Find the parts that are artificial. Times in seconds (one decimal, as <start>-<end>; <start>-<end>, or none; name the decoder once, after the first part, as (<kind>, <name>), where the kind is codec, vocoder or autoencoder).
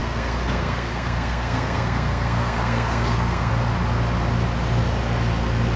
0.0-3.5 (codec, SNAC)